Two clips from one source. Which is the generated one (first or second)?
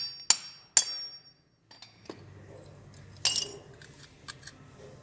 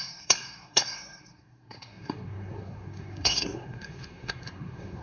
second